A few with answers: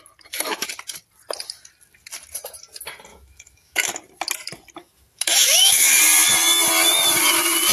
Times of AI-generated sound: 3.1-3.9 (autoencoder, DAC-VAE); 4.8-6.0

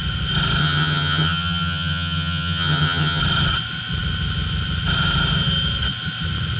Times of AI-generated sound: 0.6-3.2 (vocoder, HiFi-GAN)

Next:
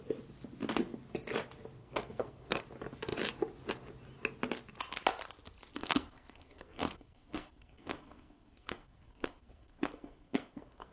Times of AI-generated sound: 1.8-2.6 (codec, SNAC); 5.8-10.9

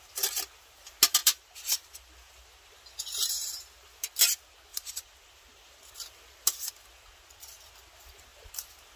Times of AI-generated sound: 1.2-2.1 (vocoder, BigVGAN v2); 4.7-5.9

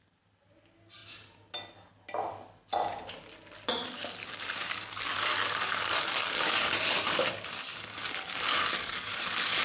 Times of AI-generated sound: 4.2-9.6 (codec, DAC)

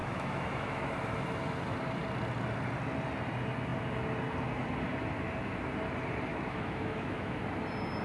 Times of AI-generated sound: 0.0-0.9 (autoencoder, DAC-VAE); 6.3-7.4